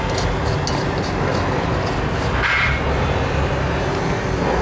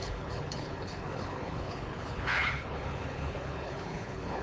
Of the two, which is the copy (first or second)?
second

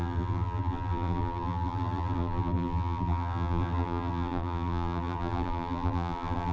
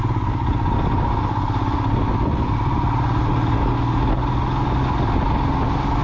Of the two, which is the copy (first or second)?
first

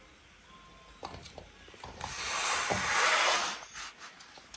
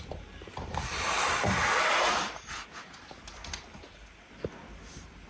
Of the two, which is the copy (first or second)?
second